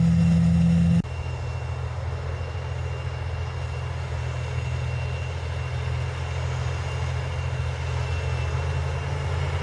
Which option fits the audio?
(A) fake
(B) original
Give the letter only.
B